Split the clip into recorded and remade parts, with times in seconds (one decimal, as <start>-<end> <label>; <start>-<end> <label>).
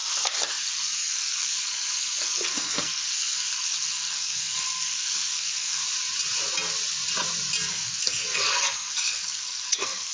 0.0-5.8 remade; 5.8-7.7 recorded; 7.7-10.1 remade